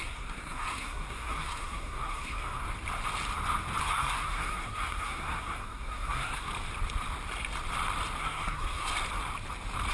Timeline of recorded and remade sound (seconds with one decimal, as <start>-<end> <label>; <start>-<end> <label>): 0.0-2.6 remade; 2.6-3.8 recorded; 3.8-6.5 remade; 6.5-8.2 recorded; 8.2-8.9 remade; 8.9-9.9 recorded